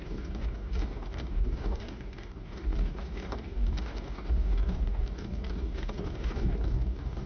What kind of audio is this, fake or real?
fake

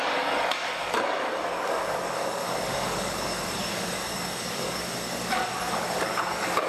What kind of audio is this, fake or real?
fake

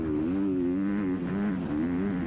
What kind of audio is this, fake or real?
real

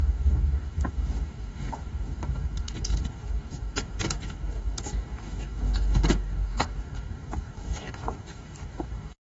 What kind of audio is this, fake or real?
fake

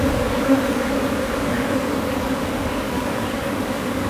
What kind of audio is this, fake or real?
fake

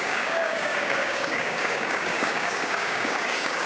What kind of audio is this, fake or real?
fake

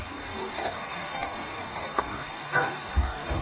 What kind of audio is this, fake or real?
fake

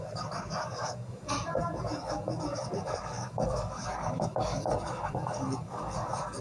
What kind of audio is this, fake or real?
fake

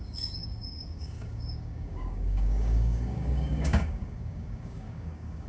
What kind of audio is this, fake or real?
fake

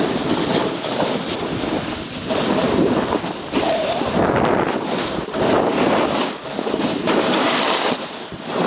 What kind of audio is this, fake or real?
real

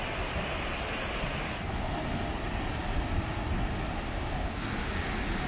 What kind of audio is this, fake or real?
real